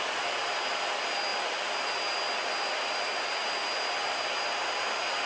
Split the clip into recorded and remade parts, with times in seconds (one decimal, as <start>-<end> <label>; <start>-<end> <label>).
0.0-5.3 recorded